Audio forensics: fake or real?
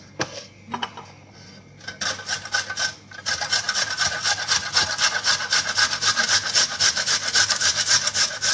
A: real